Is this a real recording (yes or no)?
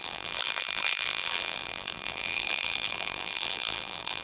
no